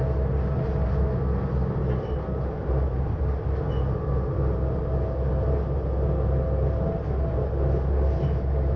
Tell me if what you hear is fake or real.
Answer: real